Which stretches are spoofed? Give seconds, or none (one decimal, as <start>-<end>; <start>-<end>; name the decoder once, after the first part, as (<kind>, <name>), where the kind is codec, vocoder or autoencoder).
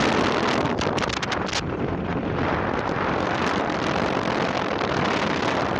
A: 2.1-5.8 (vocoder, BigVGAN v2)